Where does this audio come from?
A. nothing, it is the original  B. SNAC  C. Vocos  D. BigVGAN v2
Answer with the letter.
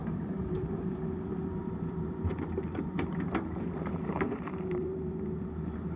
D